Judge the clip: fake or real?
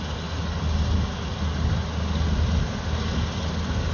real